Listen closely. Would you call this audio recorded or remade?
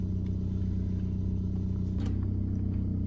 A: recorded